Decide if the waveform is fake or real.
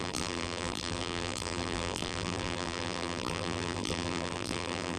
fake